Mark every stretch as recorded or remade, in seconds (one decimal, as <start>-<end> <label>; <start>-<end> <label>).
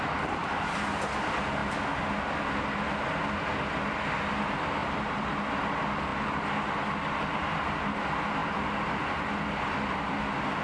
0.0-4.8 recorded; 4.8-5.5 remade; 5.5-10.6 recorded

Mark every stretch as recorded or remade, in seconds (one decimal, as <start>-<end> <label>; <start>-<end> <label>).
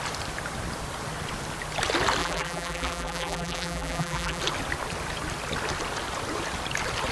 0.0-2.2 recorded; 2.2-4.4 remade; 4.4-7.1 recorded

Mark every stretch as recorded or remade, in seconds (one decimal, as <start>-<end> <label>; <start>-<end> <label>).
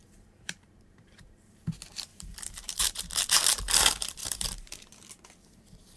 0.0-1.6 remade; 1.6-2.1 recorded; 2.1-3.6 remade; 3.6-4.2 recorded; 4.2-4.9 remade; 4.9-6.0 recorded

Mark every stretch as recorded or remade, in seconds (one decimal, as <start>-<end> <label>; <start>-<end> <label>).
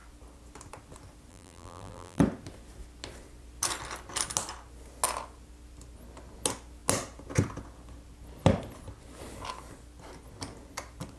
0.0-1.3 recorded; 1.3-2.2 remade; 2.2-11.2 recorded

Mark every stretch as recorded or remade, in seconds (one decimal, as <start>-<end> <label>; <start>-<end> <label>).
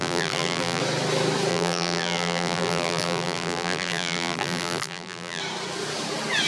0.0-0.8 remade; 0.8-1.5 recorded; 1.5-5.4 remade; 5.4-6.5 recorded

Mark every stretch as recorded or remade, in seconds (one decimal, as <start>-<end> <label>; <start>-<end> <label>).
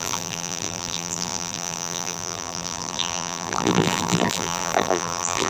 0.0-5.5 remade